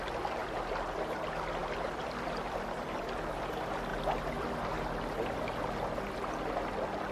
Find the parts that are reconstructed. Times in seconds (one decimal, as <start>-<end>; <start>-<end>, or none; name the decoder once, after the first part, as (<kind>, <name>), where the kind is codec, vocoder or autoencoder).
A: 1.6-3.0 (vocoder, BigVGAN v2)